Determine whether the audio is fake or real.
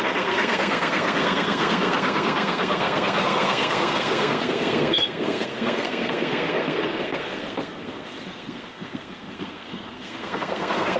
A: fake